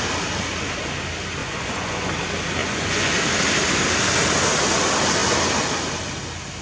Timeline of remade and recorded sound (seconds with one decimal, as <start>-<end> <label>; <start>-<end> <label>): 0.0-1.4 recorded; 1.4-2.1 remade; 2.1-2.6 recorded; 2.6-3.1 remade; 3.1-6.6 recorded